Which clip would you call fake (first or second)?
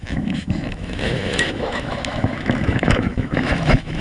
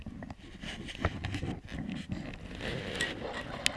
first